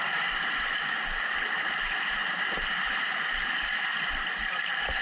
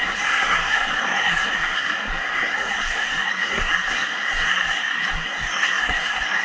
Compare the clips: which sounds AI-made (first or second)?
second